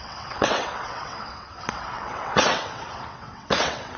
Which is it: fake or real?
fake